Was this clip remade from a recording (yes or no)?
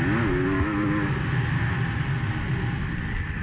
no